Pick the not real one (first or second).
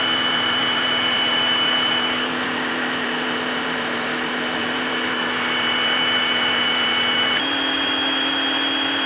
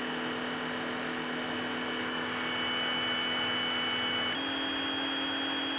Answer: first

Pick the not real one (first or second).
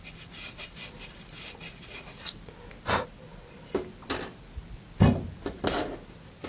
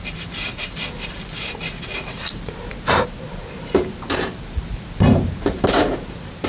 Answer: second